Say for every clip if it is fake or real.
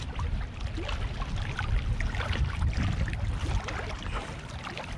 real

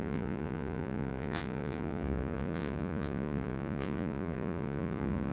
fake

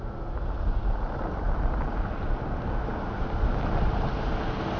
real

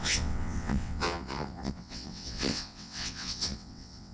fake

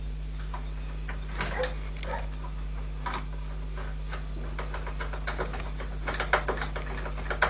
real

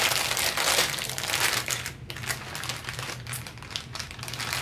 real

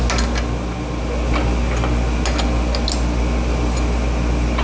real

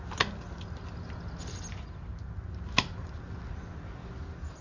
real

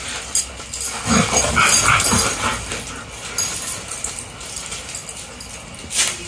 real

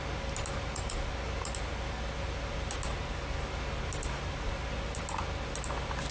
real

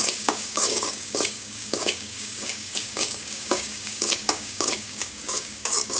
fake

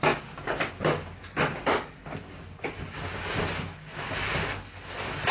real